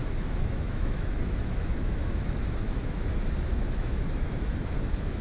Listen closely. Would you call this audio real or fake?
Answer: fake